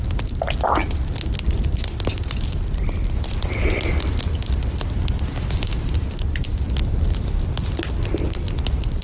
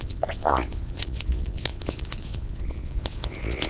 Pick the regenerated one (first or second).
second